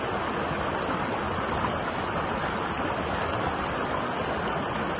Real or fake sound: real